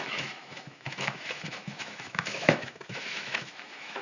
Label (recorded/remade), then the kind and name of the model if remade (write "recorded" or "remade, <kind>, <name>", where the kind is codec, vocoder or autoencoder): remade, autoencoder, DAC-VAE